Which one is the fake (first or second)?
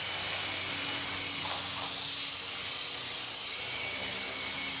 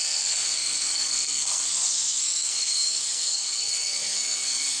second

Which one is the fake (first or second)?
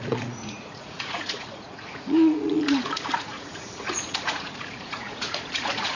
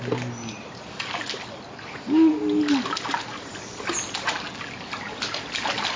first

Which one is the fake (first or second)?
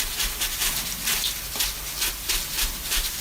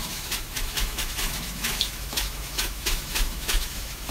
second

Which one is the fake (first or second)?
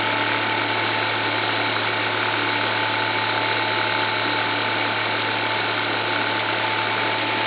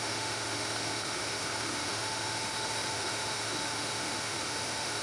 second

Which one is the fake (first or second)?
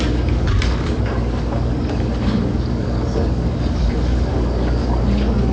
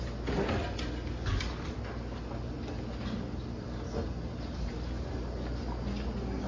first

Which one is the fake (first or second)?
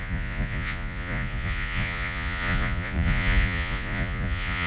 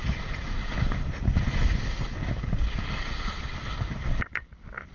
first